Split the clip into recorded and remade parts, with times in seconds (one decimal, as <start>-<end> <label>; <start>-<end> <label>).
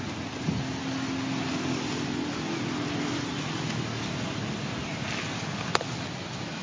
0.0-6.6 recorded